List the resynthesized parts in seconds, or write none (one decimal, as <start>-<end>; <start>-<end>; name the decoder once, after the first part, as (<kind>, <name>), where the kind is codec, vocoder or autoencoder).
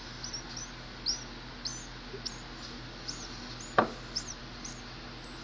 none